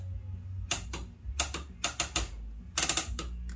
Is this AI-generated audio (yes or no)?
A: no